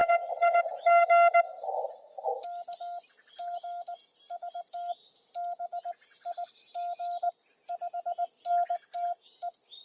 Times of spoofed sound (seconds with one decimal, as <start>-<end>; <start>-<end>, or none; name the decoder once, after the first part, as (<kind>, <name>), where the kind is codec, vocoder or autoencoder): 0.0-0.6 (vocoder, WaveNeXt)